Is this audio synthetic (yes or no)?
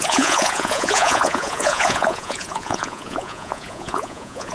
yes